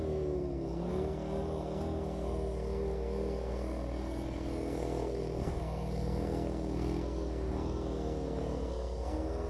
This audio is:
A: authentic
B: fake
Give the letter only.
B